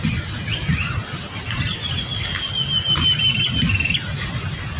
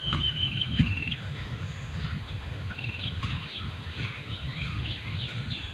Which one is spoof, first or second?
second